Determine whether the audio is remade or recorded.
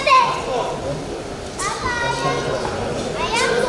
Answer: recorded